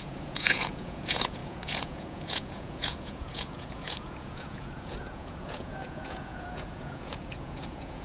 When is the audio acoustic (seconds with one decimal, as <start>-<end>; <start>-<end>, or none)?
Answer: none